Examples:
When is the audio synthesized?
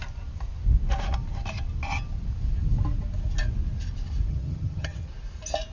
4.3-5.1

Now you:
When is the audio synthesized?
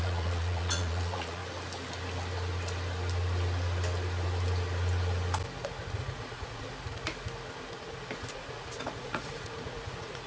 0.0-1.4; 5.9-6.7; 8.3-10.3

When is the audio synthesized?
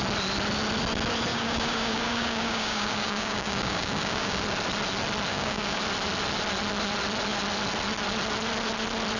1.3-4.4; 5.3-5.8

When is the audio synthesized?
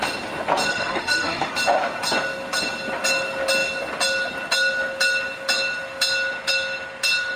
0.7-1.5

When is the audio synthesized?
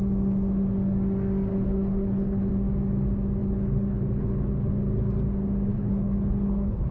1.5-2.5; 3.4-4.7; 5.7-6.9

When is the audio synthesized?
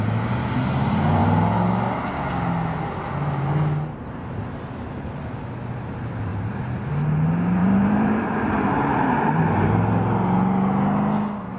6.3-6.9; 7.6-9.7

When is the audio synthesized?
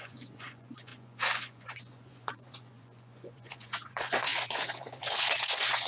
0.0-5.9